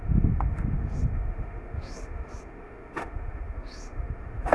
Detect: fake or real fake